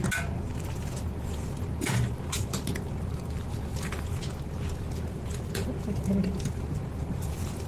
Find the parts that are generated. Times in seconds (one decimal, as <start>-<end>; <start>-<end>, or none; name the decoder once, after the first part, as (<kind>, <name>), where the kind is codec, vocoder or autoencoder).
none